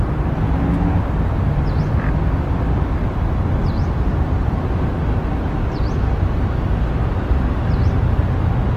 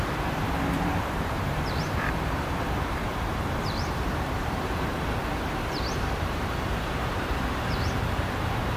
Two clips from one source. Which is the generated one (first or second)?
second